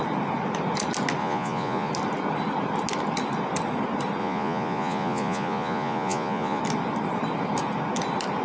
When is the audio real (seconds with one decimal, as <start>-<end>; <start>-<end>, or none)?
0.0-1.2; 1.9-4.2; 6.6-8.4